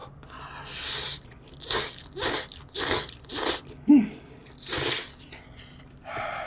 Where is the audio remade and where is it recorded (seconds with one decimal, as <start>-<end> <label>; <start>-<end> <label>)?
0.0-6.5 recorded